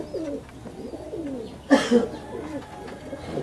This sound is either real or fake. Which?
real